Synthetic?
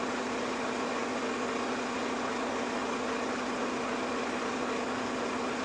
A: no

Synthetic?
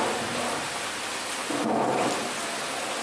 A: no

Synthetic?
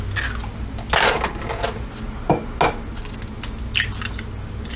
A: no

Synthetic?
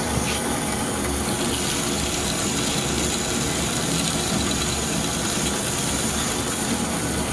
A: no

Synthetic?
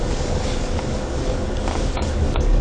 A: yes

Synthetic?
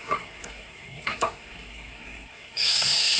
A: yes